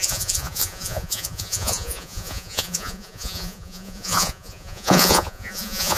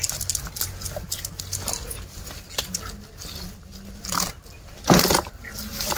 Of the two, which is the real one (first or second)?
second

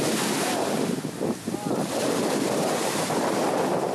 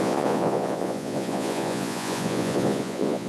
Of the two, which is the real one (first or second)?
first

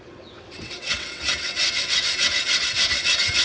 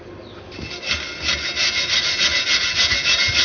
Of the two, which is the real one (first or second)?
second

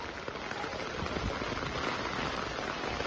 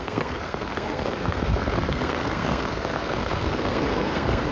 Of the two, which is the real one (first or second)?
first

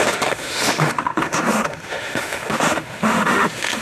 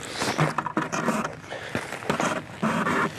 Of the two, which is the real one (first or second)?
second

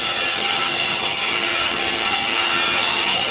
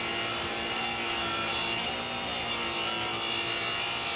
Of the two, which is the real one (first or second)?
second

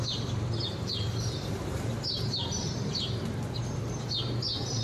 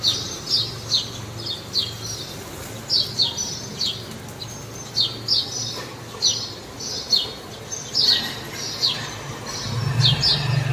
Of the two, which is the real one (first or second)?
second